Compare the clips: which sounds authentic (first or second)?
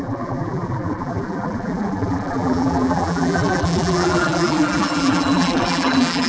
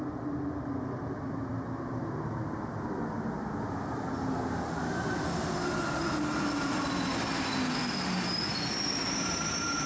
second